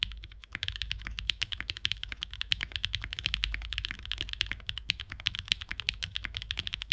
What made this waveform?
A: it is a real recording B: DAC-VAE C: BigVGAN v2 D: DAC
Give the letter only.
B